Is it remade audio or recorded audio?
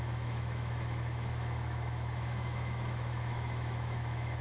remade